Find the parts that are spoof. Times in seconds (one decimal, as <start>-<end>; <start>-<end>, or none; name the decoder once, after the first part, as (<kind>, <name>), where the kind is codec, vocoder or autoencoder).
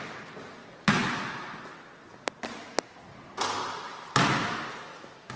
none